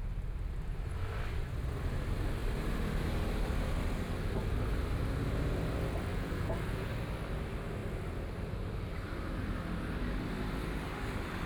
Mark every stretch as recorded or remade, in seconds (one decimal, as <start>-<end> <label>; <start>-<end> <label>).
0.0-6.1 recorded; 6.1-6.9 remade; 6.9-11.5 recorded